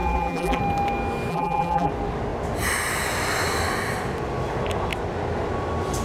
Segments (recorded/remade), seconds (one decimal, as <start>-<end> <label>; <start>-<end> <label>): 0.0-0.6 remade; 0.6-1.3 recorded; 1.3-1.9 remade; 1.9-6.0 recorded